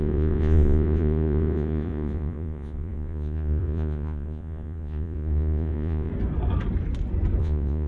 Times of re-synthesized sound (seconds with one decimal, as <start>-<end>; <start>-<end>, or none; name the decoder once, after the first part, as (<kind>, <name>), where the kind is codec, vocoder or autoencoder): 0.0-6.1 (vocoder, Vocos); 7.4-7.9